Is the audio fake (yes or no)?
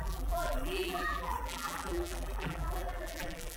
yes